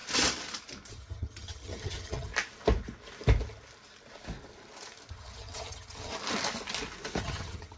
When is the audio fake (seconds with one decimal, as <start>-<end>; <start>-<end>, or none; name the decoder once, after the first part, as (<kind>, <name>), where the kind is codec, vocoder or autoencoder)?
0.9-2.3 (vocoder, HiFi-GAN); 5.1-6.1; 7.2-7.8